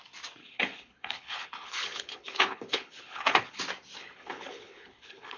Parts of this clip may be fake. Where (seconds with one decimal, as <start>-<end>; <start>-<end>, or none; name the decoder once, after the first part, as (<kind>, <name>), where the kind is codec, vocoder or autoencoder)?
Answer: 0.4-3.6 (codec, HILCodec); 4.0-5.4